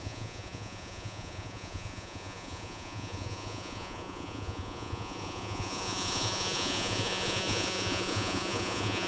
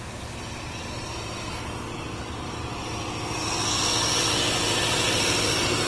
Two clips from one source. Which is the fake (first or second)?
first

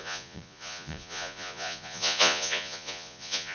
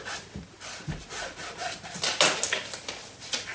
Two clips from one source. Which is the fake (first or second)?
first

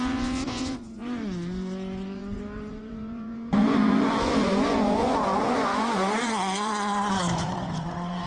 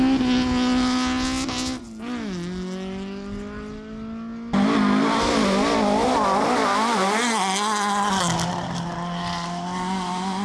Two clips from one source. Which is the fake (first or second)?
first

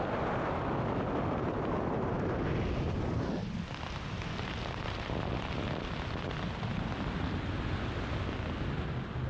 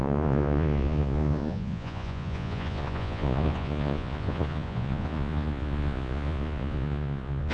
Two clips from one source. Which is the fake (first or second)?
second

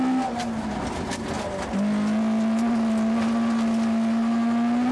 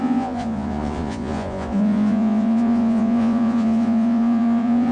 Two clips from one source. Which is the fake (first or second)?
second